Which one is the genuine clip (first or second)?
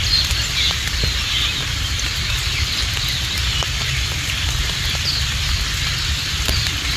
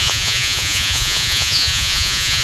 first